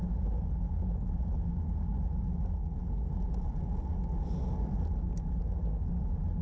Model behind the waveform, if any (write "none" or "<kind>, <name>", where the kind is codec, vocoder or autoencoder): none